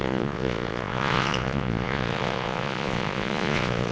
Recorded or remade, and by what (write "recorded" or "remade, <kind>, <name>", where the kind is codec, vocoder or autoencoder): remade, vocoder, Vocos